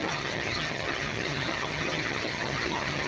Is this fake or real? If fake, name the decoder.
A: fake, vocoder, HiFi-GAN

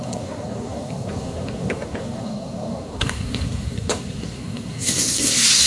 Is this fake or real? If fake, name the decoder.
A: fake, codec, SNAC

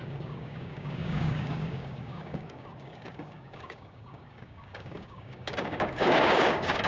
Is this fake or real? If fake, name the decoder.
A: fake, codec, DAC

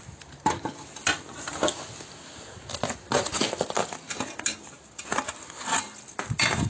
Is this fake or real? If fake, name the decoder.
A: real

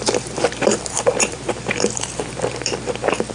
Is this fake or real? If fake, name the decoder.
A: fake, vocoder, BigVGAN v2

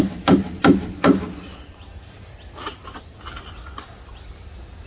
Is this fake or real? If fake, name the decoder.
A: real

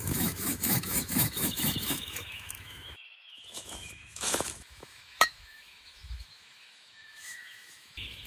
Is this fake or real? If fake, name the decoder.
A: fake, autoencoder, DAC-VAE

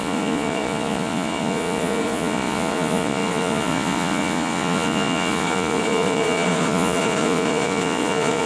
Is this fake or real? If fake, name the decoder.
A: fake, vocoder, Vocos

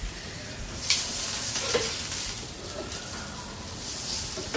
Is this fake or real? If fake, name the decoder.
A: fake, vocoder, BigVGAN v2